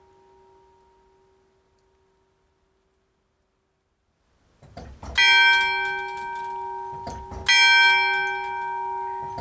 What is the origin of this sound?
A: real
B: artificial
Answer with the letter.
A